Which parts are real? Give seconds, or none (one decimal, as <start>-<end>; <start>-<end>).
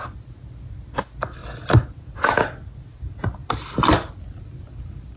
0.0-1.4; 2.2-5.2